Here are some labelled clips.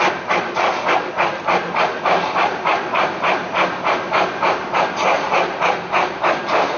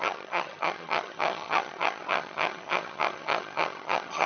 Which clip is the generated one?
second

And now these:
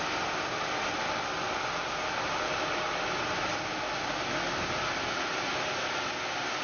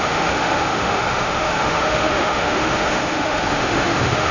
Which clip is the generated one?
second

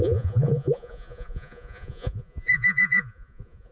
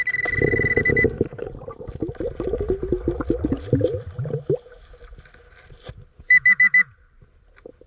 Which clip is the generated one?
first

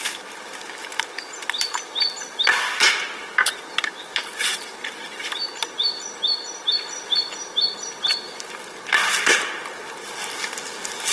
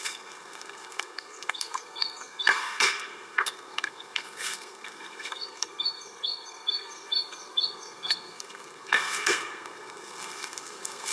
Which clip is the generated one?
second